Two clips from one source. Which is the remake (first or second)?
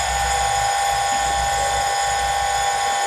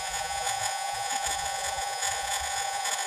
second